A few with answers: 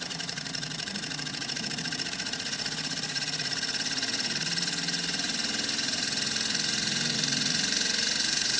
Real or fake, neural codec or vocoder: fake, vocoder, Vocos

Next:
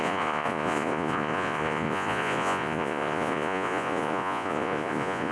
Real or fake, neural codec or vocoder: fake, vocoder, Vocos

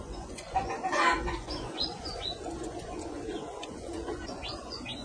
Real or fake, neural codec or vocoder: fake, vocoder, Vocos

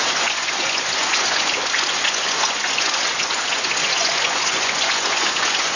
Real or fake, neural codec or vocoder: fake, vocoder, Vocos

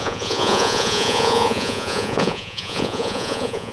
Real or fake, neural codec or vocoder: fake, vocoder, Vocos